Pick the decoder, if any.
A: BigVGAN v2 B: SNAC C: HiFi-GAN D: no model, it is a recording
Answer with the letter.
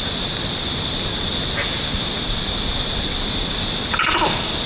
D